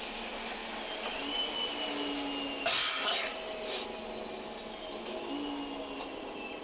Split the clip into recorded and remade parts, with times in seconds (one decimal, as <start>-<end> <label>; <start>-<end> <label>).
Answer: 0.0-6.6 recorded

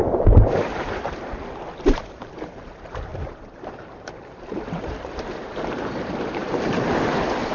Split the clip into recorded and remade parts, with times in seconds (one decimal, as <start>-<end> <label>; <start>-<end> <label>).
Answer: 0.0-0.6 recorded; 0.6-1.0 remade; 1.0-2.0 recorded; 2.0-7.5 remade

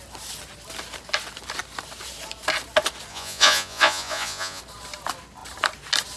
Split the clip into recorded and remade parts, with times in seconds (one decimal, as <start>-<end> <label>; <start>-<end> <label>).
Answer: 0.0-3.1 recorded; 3.1-4.6 remade; 4.6-6.2 recorded